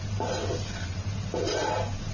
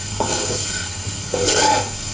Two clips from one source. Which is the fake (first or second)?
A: second